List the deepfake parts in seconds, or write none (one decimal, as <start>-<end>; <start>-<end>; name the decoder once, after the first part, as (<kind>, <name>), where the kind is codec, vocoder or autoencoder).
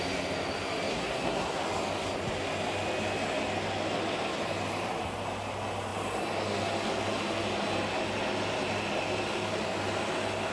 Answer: 0.9-1.6 (codec, SNAC)